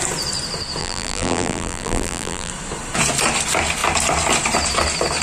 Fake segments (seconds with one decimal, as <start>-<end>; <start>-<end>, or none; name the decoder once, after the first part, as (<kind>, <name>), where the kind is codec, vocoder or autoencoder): 0.8-2.5 (vocoder, BigVGAN v2)